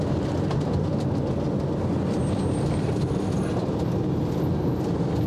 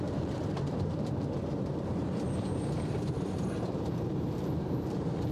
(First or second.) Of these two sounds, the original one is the first